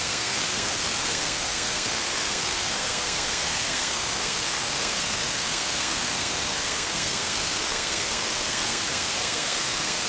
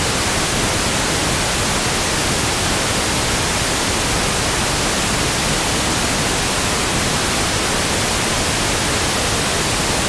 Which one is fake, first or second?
first